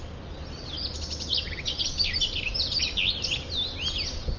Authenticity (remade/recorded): recorded